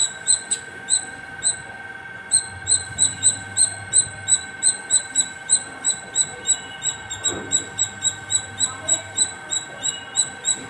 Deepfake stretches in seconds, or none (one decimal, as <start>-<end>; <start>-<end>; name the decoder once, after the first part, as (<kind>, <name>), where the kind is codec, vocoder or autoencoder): 0.0-3.2 (vocoder, Vocos)